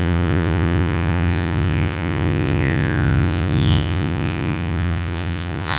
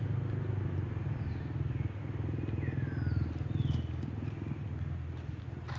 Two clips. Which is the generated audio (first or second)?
first